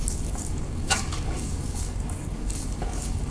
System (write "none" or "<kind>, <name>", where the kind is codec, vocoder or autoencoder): codec, DAC